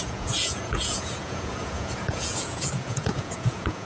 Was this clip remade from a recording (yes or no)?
yes